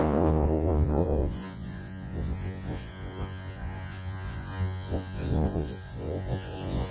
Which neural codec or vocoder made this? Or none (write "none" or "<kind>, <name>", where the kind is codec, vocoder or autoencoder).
vocoder, Vocos